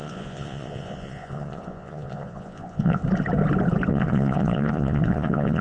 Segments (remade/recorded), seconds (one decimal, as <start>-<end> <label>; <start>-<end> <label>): 0.0-3.0 remade; 3.0-3.9 recorded; 3.9-5.6 remade